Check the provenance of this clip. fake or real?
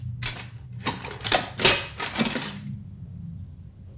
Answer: real